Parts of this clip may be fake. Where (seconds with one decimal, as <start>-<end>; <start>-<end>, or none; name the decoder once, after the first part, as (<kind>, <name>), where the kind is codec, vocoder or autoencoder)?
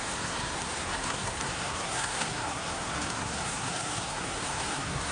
0.0-5.1 (codec, SNAC)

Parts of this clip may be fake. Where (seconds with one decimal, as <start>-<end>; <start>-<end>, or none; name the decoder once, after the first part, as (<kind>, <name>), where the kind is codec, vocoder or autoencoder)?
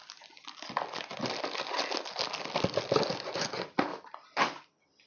3.9-5.1 (vocoder, BigVGAN v2)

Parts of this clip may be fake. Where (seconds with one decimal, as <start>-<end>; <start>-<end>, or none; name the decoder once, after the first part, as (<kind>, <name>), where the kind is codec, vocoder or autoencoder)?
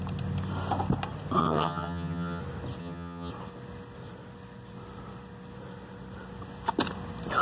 1.4-2.4 (vocoder, HiFi-GAN); 2.8-3.3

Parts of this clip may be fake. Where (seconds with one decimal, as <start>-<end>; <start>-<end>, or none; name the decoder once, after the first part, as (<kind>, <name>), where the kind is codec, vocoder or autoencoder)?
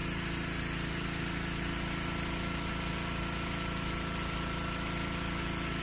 none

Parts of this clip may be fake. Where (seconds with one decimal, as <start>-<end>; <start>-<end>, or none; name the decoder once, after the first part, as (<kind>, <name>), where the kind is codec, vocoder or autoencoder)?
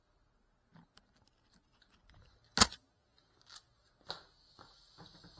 none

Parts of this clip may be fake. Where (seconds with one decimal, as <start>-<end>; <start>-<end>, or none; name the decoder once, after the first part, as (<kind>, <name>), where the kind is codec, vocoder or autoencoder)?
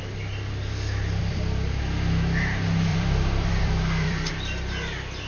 1.2-1.8 (vocoder, BigVGAN v2); 2.9-4.3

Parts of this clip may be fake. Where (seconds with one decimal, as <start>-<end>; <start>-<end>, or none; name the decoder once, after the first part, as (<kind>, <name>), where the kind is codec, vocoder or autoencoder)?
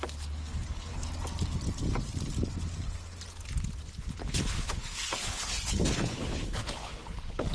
0.0-1.0 (codec, HILCodec); 4.0-7.5